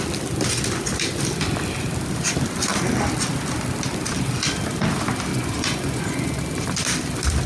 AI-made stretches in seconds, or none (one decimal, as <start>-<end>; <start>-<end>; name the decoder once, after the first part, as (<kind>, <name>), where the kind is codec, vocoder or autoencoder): 5.3-6.4 (vocoder, Vocos)